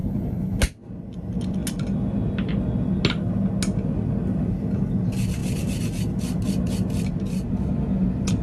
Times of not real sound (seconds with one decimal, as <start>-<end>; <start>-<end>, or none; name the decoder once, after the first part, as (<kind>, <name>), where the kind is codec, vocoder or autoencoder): 0.0-0.6 (codec, HILCodec)